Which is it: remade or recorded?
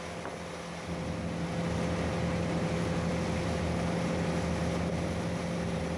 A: recorded